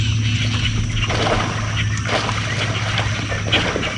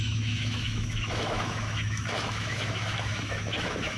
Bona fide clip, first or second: first